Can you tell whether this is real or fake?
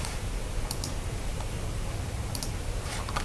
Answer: fake